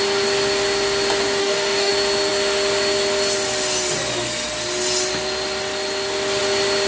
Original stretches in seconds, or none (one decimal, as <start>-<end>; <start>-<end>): 0.0-1.4; 1.9-6.9